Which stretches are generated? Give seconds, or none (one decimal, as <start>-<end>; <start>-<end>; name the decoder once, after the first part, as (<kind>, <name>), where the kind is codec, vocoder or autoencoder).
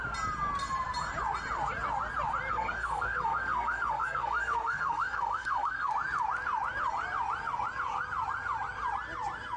2.5-5.9 (codec, SNAC)